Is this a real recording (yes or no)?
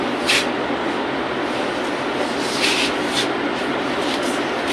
yes